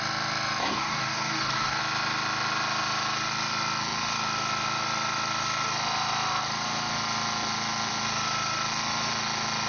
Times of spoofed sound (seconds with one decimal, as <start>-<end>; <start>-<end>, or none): 0.6-1.8